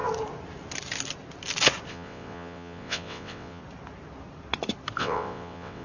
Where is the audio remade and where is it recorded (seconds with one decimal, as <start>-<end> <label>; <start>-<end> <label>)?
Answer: 0.0-1.9 recorded; 1.9-3.6 remade; 3.6-5.0 recorded; 5.0-5.8 remade